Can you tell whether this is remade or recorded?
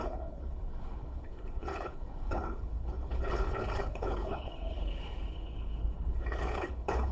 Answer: remade